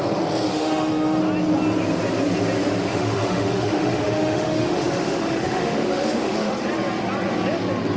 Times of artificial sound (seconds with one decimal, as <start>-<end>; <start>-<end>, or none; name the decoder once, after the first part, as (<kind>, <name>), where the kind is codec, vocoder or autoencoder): 0.5-1.2 (autoencoder, DAC-VAE); 2.9-6.5